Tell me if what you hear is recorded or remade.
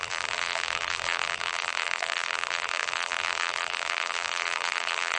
remade